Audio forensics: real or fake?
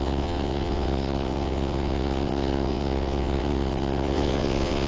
fake